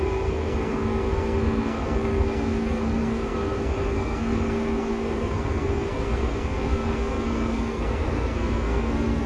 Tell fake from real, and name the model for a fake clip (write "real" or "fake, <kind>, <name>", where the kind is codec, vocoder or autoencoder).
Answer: fake, codec, SNAC